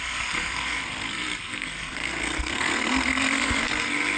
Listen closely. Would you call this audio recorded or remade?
remade